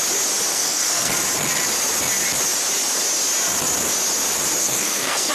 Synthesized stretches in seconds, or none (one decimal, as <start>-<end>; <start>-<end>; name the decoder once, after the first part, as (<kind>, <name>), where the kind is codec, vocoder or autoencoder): 0.5-1.1 (codec, SNAC); 4.6-5.3

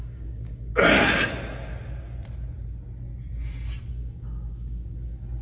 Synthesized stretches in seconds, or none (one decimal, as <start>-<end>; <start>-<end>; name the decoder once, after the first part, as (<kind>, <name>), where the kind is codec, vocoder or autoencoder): 0.0-0.7 (codec, DAC); 3.9-5.4

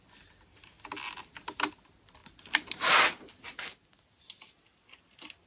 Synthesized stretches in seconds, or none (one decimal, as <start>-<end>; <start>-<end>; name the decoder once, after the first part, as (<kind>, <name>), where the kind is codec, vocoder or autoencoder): none

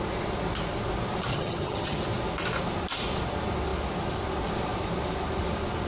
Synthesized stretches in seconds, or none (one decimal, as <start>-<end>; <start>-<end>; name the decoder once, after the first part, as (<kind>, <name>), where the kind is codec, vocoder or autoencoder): 1.3-2.0 (vocoder, HiFi-GAN)

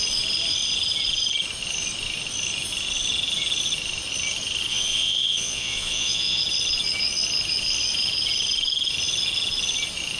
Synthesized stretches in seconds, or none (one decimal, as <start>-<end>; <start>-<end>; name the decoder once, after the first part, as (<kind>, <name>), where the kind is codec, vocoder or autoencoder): 4.7-6.4 (vocoder, Vocos)

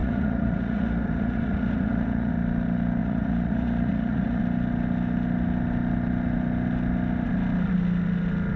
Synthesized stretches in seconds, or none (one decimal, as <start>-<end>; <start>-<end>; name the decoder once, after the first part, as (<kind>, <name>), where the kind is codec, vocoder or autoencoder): 0.0-2.3 (vocoder, Vocos); 3.0-4.4

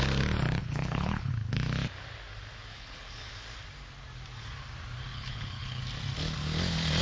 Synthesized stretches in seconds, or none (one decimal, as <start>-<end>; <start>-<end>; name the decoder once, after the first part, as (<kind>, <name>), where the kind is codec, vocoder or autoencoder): 0.6-1.3 (codec, HILCodec); 2.7-3.3; 5.1-5.8